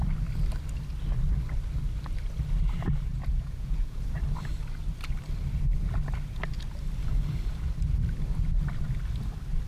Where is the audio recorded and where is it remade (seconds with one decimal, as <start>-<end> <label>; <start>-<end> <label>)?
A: 0.0-3.1 recorded; 3.1-4.0 remade; 4.0-9.7 recorded